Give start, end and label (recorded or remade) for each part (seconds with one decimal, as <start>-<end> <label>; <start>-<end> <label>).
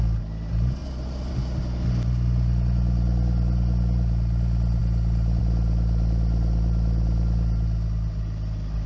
0.0-8.9 recorded